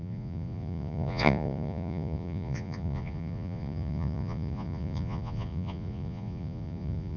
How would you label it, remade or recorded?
remade